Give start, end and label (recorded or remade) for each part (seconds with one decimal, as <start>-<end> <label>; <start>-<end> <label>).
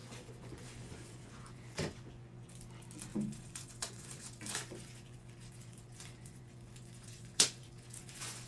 0.0-2.6 remade; 2.6-3.1 recorded; 3.1-8.5 remade